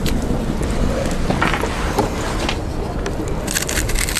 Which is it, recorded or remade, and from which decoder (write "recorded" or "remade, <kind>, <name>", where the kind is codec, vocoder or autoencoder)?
recorded